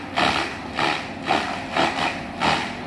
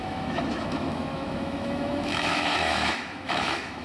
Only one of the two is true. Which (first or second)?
first